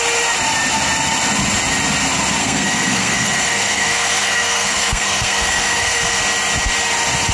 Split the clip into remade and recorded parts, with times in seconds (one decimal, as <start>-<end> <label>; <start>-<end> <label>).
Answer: 0.0-2.4 recorded; 2.4-6.2 remade; 6.2-7.3 recorded